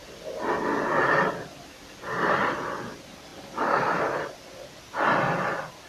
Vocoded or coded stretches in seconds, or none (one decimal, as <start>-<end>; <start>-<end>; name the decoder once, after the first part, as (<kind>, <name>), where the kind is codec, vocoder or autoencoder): 3.3-4.8 (vocoder, BigVGAN v2)